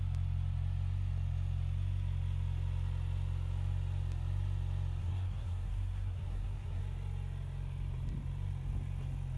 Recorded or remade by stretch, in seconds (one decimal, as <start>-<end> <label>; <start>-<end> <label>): 0.0-5.0 recorded; 5.0-6.8 remade; 6.8-9.4 recorded

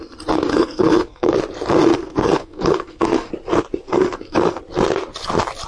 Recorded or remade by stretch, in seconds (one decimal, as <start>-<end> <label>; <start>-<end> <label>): 0.0-0.5 recorded; 0.5-1.4 remade; 1.4-1.9 recorded; 1.9-3.3 remade; 3.3-3.9 recorded; 3.9-4.6 remade; 4.6-5.7 recorded

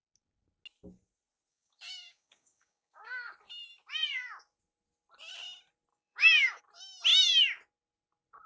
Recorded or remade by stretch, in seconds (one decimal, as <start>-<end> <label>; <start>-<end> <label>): 0.0-1.5 recorded; 1.5-3.3 remade; 3.3-5.9 recorded; 5.9-6.6 remade; 6.6-8.5 recorded

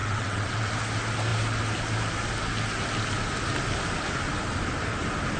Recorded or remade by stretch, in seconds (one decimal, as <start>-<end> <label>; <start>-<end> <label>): 0.0-0.7 remade; 0.7-5.4 recorded